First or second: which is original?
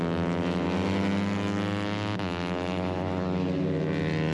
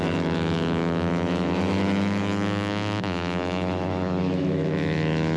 first